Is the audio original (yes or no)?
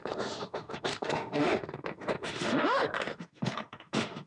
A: no